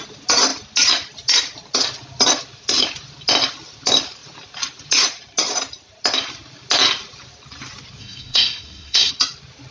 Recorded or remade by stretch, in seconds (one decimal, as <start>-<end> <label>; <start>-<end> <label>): 0.0-8.0 recorded; 8.0-9.1 remade; 9.1-9.7 recorded